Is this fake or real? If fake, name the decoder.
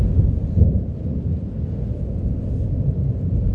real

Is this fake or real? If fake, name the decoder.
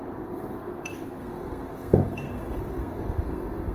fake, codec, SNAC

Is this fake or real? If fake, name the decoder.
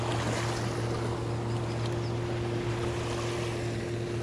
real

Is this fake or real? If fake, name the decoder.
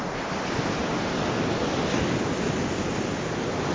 real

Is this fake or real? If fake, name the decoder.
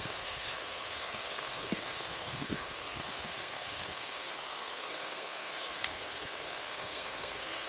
fake, codec, SNAC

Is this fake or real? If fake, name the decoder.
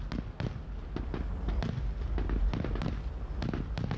real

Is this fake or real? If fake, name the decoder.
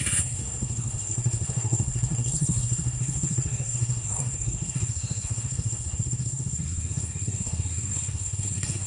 fake, codec, SNAC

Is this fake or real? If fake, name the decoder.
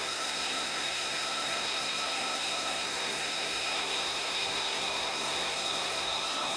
fake, codec, SNAC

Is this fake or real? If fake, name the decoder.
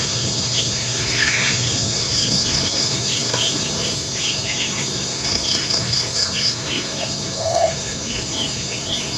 fake, codec, SNAC